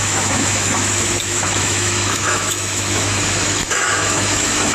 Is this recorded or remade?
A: remade